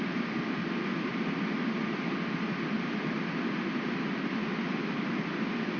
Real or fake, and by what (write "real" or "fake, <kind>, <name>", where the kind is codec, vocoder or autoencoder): real